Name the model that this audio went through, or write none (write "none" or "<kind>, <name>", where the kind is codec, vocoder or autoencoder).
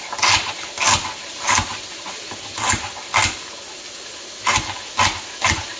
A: none